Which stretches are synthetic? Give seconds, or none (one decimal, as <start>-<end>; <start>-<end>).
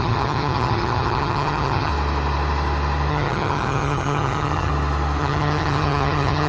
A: 0.0-1.9; 3.1-4.7; 5.2-6.5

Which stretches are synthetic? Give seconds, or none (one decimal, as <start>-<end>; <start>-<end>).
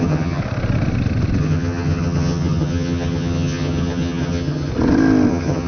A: 0.0-0.4; 1.4-4.7; 5.3-5.7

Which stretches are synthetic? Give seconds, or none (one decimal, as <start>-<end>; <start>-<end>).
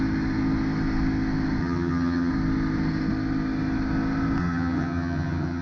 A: 1.6-2.3; 4.4-5.6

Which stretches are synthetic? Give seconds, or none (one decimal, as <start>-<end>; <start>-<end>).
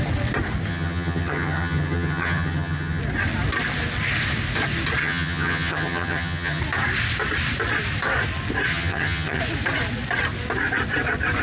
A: 0.7-3.0; 5.0-6.6; 8.7-9.4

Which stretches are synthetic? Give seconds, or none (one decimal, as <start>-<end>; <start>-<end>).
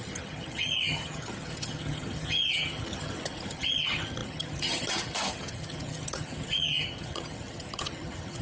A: 0.0-8.4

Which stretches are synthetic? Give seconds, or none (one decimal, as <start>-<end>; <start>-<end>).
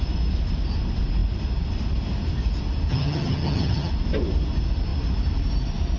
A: 2.9-3.9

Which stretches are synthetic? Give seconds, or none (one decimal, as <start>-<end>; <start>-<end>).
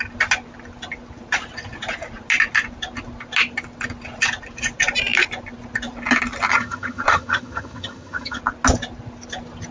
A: 6.5-8.4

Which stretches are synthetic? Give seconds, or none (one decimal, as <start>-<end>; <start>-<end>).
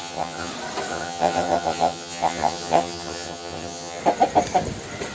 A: 0.0-0.5; 0.9-4.0